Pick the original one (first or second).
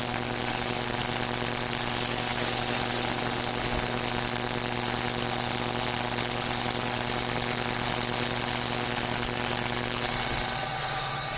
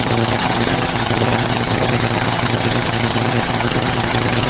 first